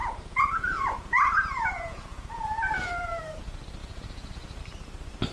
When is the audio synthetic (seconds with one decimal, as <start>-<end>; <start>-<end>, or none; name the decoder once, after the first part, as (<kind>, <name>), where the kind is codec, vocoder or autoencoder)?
0.0-3.2 (vocoder, Vocos); 3.8-4.6